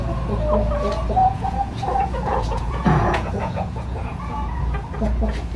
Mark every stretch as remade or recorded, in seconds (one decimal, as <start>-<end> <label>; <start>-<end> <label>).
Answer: 0.0-1.2 recorded; 1.2-4.6 remade; 4.6-5.6 recorded